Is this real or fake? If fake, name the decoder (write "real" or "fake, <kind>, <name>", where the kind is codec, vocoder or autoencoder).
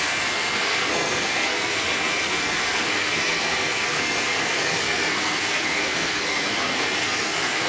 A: fake, codec, SNAC